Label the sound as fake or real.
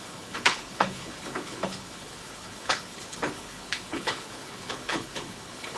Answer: fake